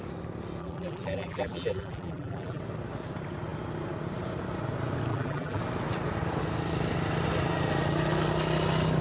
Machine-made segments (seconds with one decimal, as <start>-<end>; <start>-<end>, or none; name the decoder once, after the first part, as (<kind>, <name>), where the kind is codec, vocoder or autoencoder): 0.6-2.6 (vocoder, BigVGAN v2); 5.1-5.6